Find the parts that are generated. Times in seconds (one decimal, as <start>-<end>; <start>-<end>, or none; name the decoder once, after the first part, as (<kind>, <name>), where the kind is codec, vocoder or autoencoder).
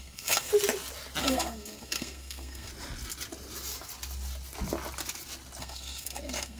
0.0-0.5 (codec, SNAC); 1.2-2.7; 5.6-6.6